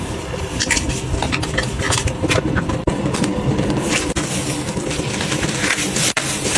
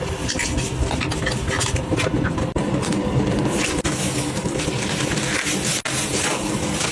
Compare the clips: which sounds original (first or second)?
second